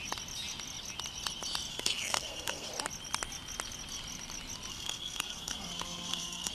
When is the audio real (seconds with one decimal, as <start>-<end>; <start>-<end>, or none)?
0.0-1.7; 2.7-4.7